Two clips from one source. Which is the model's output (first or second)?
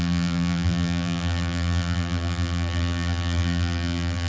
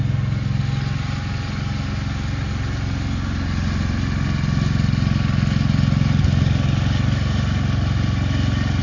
first